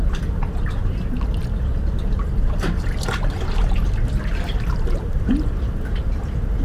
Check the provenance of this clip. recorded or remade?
recorded